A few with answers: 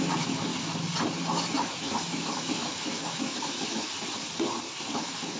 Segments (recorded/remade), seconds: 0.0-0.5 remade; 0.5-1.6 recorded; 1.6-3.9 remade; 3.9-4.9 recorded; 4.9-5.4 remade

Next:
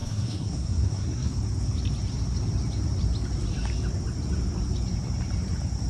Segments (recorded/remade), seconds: 0.0-1.3 remade; 1.3-5.9 recorded

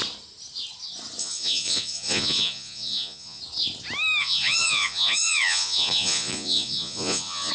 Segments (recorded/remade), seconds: 0.0-1.2 recorded; 1.2-3.4 remade; 3.4-4.2 recorded; 4.2-7.5 remade

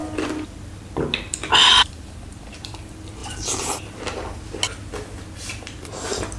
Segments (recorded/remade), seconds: 0.0-1.8 recorded; 1.8-2.8 remade; 2.8-6.4 recorded

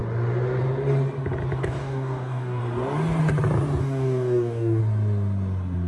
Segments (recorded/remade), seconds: 0.0-1.6 recorded; 1.6-2.6 remade; 2.6-3.8 recorded; 3.8-4.8 remade; 4.8-5.9 recorded

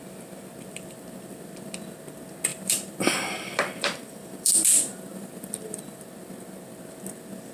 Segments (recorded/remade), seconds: 0.0-2.5 recorded; 2.5-6.0 remade; 6.0-7.5 recorded

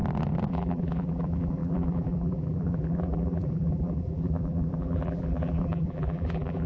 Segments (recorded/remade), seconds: 0.0-0.5 recorded; 0.5-6.7 remade

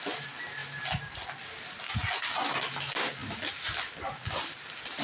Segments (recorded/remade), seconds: 0.0-0.6 remade; 0.6-2.6 recorded; 2.6-5.0 remade